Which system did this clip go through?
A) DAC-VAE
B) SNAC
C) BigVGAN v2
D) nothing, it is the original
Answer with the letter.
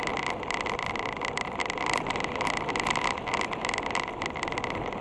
D